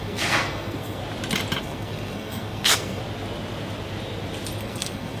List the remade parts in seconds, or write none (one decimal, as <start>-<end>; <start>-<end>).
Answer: 0.0-1.0; 1.6-3.0; 4.6-5.2